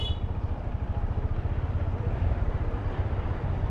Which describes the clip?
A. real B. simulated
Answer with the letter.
B